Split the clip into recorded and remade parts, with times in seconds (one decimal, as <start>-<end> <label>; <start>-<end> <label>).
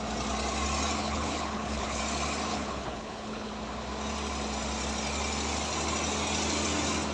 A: 0.0-1.0 recorded; 1.0-2.0 remade; 2.0-2.5 recorded; 2.5-3.5 remade; 3.5-7.1 recorded